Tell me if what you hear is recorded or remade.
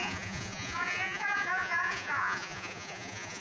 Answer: remade